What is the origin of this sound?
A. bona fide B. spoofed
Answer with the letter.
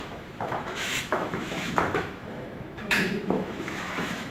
B